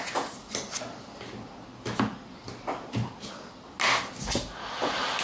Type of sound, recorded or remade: recorded